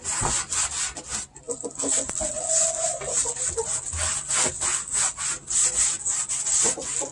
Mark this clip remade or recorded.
recorded